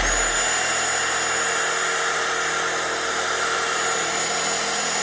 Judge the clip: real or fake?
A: real